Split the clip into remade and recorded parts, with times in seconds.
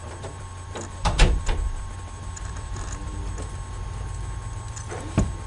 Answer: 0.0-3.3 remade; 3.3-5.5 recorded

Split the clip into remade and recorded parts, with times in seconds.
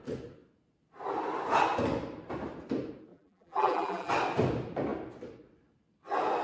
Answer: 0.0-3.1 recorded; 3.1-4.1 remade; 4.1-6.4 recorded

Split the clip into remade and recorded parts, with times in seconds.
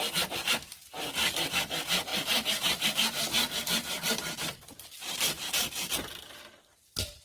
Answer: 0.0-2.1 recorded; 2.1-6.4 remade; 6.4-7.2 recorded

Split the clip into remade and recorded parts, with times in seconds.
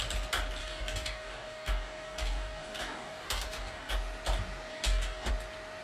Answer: 0.0-0.6 recorded; 0.6-3.9 remade; 3.9-4.7 recorded; 4.7-5.3 remade; 5.3-5.8 recorded